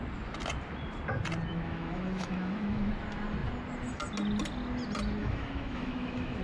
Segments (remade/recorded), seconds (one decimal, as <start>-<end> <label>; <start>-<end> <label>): 0.0-1.5 recorded; 1.5-2.9 remade; 2.9-5.2 recorded; 5.2-6.4 remade